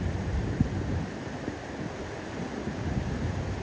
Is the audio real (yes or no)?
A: yes